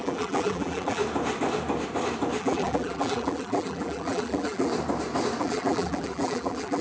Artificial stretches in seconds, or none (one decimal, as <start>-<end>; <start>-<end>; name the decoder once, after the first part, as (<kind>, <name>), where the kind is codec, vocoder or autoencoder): 0.0-1.0 (vocoder, BigVGAN v2); 2.4-4.7; 5.4-6.8